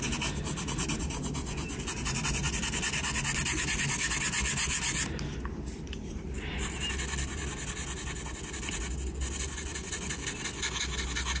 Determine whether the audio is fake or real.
real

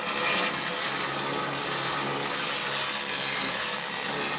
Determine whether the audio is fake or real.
real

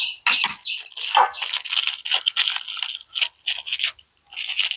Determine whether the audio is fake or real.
real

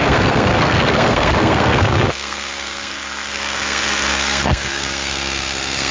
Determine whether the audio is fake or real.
fake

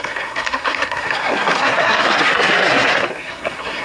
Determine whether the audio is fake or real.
fake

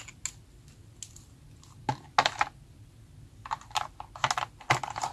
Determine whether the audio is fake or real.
real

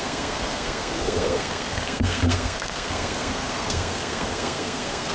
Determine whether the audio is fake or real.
fake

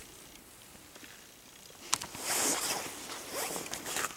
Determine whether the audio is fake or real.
real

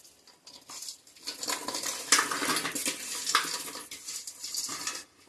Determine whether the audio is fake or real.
real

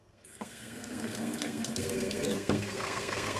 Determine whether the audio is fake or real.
fake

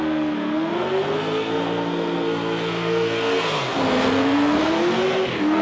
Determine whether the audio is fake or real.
fake